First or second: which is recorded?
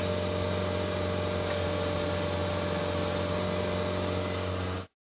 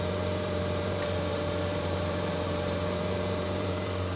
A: first